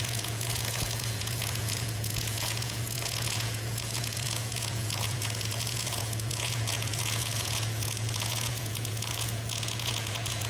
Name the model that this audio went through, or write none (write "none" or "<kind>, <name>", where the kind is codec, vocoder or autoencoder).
vocoder, Vocos